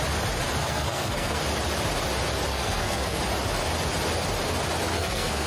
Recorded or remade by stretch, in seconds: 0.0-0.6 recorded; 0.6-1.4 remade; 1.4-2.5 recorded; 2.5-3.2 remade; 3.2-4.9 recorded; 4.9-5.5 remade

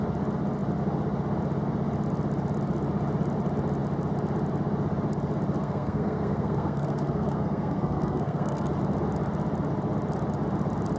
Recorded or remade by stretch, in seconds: 0.0-5.6 recorded; 5.6-8.7 remade; 8.7-11.0 recorded

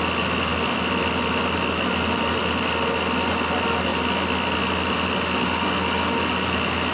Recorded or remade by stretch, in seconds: 0.0-6.9 recorded

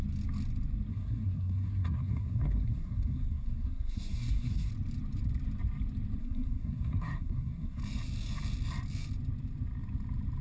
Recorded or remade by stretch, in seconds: 0.0-0.9 recorded; 0.9-4.7 remade; 4.7-6.2 recorded; 6.2-7.8 remade; 7.8-10.4 recorded

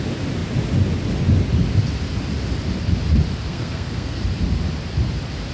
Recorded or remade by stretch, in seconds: 0.0-3.5 recorded; 3.5-4.2 remade; 4.2-5.5 recorded

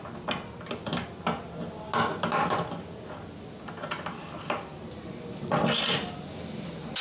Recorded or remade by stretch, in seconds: 0.0-7.0 recorded

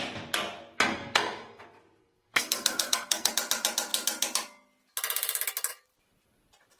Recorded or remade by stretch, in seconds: 0.0-0.9 recorded; 0.9-1.6 remade; 1.6-2.0 recorded; 2.0-3.3 remade; 3.3-6.8 recorded